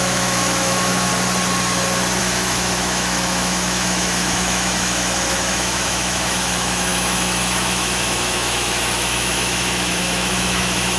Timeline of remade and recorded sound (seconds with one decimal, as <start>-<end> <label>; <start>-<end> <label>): 0.0-1.1 remade; 1.1-2.2 recorded; 2.2-11.0 remade